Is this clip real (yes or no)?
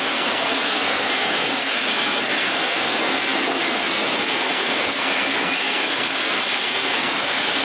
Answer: no